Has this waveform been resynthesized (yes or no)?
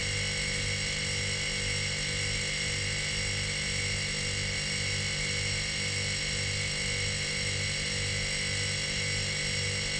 no